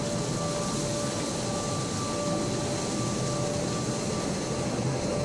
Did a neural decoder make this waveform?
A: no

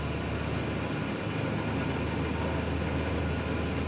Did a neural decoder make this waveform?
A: no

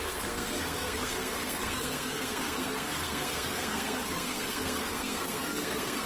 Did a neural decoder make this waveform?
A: yes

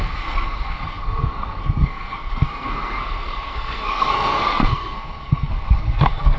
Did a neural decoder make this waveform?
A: yes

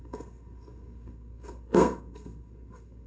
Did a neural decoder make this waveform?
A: yes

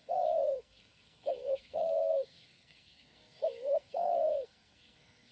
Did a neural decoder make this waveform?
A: yes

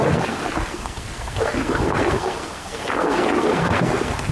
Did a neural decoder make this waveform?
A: yes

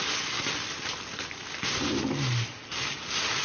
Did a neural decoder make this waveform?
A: no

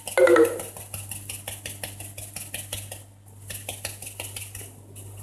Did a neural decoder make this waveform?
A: no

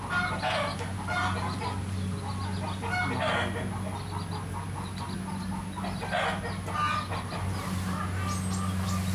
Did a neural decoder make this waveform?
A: no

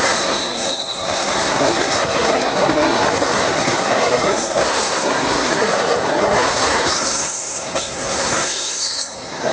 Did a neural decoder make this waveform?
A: yes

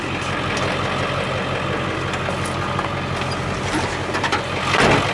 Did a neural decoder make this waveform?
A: no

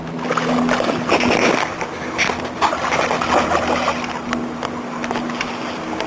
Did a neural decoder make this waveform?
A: no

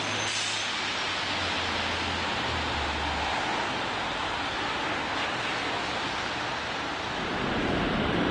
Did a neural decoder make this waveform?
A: no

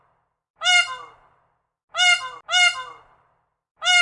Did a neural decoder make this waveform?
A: no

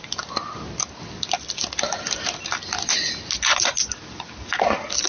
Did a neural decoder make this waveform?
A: no